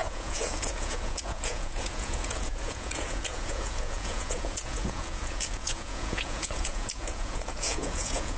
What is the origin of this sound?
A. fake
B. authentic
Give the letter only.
A